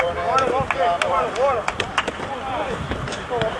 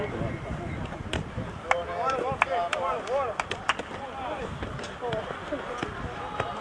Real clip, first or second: second